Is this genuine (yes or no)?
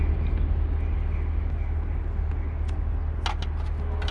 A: yes